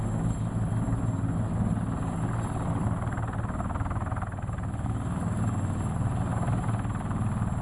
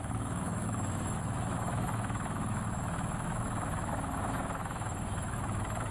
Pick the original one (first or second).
first